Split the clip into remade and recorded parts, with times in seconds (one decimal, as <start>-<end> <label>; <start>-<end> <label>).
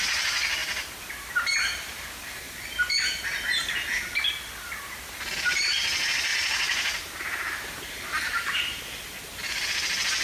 0.0-6.3 recorded; 6.3-8.8 remade; 8.8-10.2 recorded